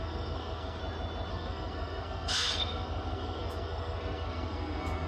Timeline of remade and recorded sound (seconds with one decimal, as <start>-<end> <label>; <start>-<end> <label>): 0.0-0.8 remade; 0.8-1.3 recorded; 1.3-5.1 remade